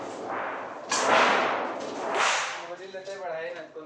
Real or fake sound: real